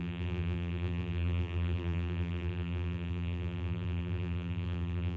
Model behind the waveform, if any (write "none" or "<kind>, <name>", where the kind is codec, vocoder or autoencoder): vocoder, BigVGAN v2